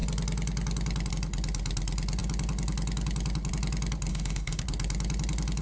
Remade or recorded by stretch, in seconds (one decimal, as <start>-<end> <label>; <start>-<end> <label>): 0.0-4.1 recorded; 4.1-4.6 remade; 4.6-5.6 recorded